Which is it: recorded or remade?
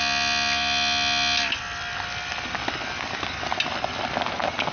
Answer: recorded